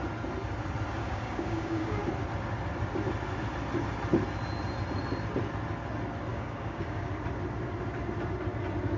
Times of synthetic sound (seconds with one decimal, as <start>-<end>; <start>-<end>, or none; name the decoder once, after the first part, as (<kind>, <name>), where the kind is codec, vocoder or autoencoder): 1.0-2.0 (codec, DAC); 6.3-7.1